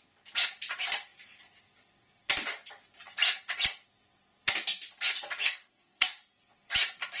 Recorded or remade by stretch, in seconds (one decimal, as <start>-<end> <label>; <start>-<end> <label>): 0.0-5.4 recorded; 5.4-6.1 remade; 6.1-7.2 recorded